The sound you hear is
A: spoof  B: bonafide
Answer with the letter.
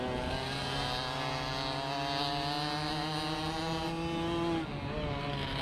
B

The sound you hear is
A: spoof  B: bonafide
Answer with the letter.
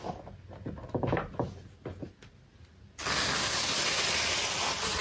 B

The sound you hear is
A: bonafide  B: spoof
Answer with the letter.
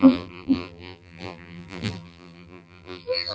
B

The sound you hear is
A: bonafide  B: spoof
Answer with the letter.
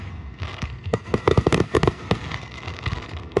B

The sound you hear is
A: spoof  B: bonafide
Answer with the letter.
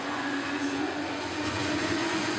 A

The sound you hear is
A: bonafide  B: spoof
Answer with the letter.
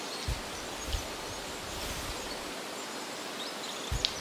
A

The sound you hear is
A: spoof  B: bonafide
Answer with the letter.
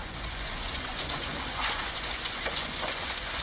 A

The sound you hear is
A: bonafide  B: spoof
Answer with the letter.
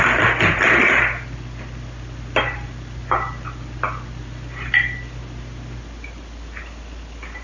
A